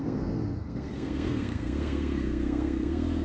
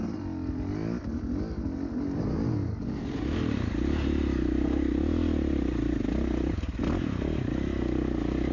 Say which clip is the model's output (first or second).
first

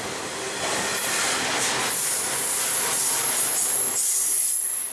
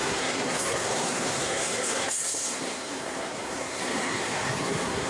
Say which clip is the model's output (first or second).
second